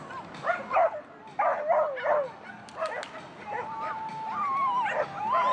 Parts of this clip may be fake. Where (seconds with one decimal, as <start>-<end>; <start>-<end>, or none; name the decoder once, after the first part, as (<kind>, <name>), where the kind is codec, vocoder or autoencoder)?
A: none